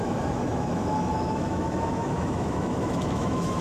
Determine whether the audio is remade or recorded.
remade